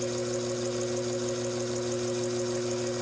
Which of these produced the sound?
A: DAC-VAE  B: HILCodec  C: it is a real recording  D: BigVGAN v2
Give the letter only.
C